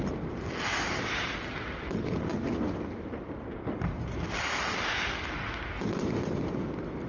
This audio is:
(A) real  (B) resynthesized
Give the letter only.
A